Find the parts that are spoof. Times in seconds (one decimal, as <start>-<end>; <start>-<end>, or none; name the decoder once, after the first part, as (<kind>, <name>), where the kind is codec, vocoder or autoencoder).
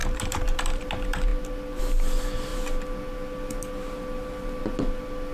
0.0-0.8 (vocoder, BigVGAN v2)